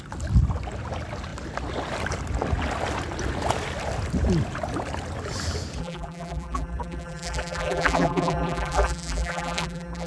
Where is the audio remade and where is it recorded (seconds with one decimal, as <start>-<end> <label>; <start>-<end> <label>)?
0.0-5.8 recorded; 5.8-10.1 remade